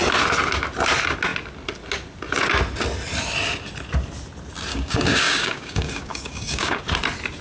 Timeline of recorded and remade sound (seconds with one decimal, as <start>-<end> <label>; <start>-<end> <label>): 0.0-4.7 recorded; 4.7-6.8 remade; 6.8-7.4 recorded